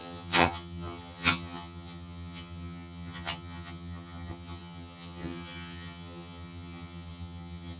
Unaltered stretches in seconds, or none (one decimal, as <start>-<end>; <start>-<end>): none